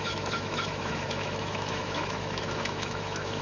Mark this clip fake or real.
fake